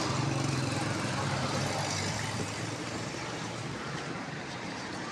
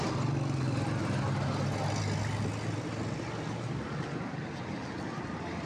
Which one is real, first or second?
second